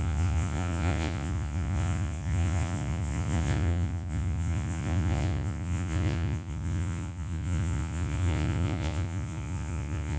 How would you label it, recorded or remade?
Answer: remade